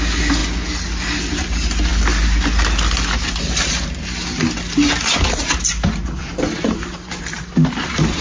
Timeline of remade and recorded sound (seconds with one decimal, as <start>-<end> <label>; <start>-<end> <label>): 0.0-6.3 recorded; 6.3-8.2 remade